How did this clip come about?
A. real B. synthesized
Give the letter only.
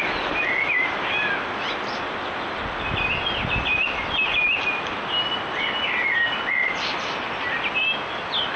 A